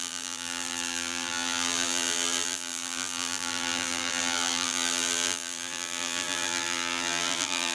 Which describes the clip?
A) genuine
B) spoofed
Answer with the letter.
B